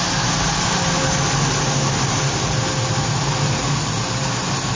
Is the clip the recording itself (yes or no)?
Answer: yes